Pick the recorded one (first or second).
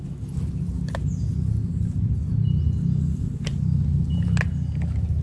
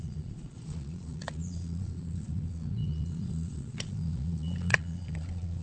first